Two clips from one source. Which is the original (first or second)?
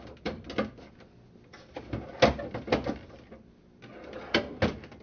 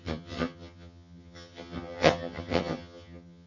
first